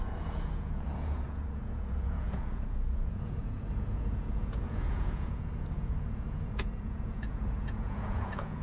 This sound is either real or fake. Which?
fake